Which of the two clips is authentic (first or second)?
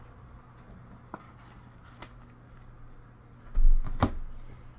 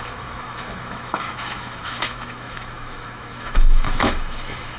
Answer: first